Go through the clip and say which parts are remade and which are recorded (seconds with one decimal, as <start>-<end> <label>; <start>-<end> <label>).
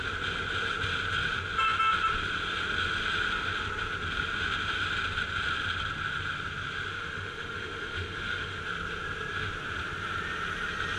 0.0-6.9 recorded; 6.9-8.6 remade; 8.6-11.0 recorded